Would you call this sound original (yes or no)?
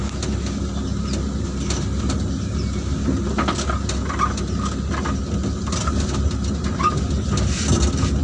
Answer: yes